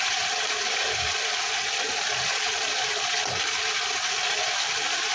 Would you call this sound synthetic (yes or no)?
no